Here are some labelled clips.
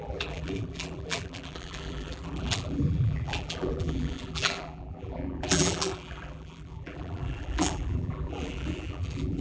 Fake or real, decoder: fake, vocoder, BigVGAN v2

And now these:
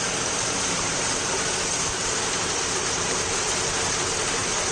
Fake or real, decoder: fake, vocoder, BigVGAN v2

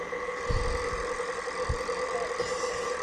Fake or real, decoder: real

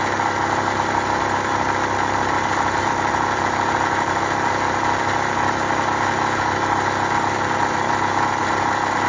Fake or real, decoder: real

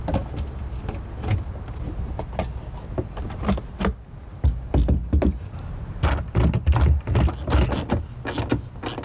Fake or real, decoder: real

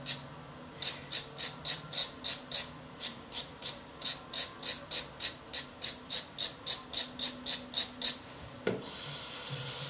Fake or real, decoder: real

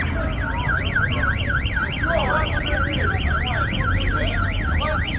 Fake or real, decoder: real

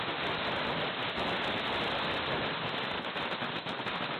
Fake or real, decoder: real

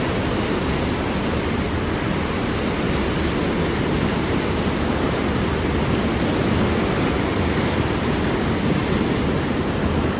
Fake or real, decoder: real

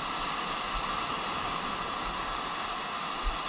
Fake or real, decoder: real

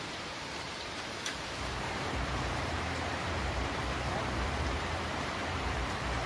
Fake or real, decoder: fake, vocoder, BigVGAN v2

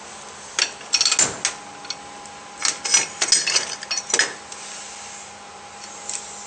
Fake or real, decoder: real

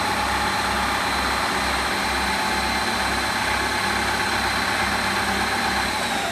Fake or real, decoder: real